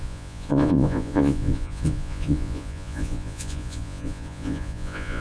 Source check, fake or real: fake